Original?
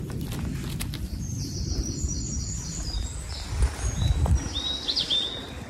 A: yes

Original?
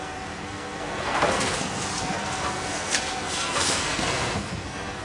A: no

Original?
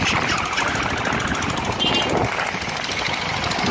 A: yes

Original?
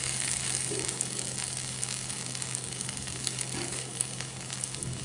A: no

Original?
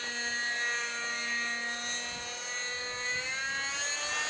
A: yes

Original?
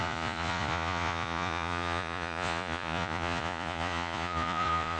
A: no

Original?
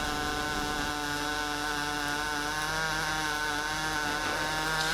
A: yes